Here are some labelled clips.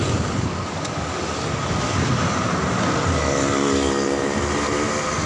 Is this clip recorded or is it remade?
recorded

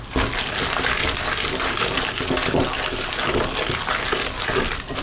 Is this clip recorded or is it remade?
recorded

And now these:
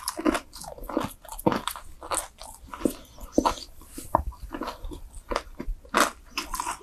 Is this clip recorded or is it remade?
recorded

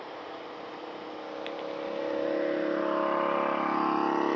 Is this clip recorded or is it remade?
recorded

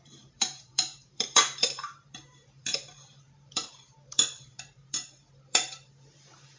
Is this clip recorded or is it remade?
remade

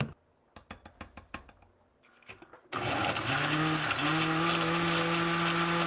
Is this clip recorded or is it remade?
recorded